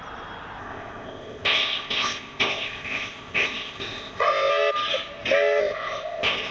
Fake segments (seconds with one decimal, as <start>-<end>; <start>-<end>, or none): 0.6-4.5; 5.6-6.5